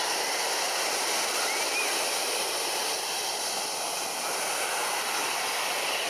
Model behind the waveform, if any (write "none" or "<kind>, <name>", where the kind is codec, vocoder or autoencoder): none